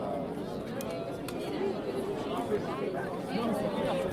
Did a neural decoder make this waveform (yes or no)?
no